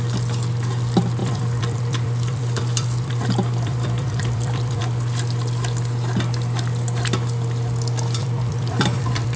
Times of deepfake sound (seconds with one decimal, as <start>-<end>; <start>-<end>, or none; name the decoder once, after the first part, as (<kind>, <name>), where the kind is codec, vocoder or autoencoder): 1.2-4.8 (vocoder, BigVGAN v2); 8.2-9.4